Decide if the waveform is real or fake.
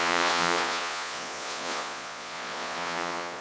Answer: fake